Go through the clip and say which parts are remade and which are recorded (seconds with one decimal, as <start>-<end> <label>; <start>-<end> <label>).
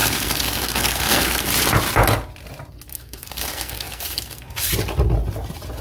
0.0-1.5 remade; 1.5-2.9 recorded; 2.9-4.7 remade; 4.7-5.8 recorded